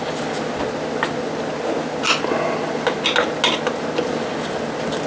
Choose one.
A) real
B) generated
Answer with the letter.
A